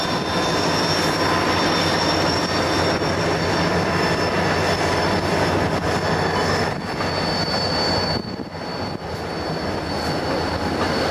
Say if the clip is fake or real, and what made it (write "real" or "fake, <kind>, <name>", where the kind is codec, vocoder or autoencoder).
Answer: real